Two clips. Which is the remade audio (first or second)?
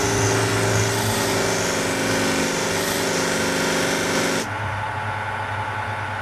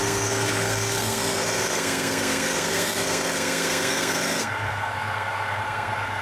second